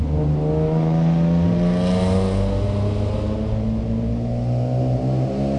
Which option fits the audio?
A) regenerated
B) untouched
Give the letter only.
B